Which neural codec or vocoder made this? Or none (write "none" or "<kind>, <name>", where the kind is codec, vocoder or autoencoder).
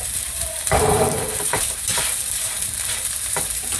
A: vocoder, BigVGAN v2